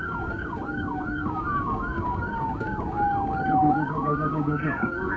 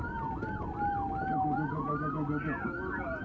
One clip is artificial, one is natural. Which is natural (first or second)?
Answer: second